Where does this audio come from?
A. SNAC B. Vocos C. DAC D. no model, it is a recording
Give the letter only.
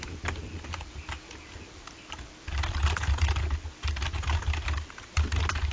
D